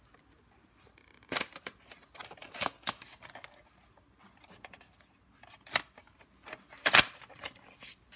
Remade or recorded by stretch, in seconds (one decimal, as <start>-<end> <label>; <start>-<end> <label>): 0.0-8.2 recorded